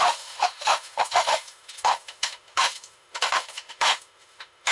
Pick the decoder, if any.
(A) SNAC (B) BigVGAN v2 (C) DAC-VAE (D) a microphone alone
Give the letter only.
C